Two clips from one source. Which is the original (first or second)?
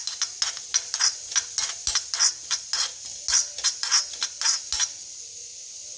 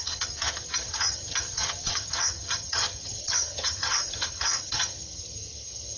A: first